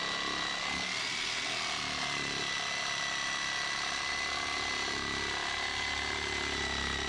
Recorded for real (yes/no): yes